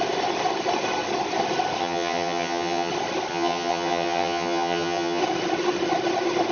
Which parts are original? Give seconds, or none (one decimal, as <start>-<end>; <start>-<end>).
0.0-1.8; 2.9-3.3; 5.2-6.5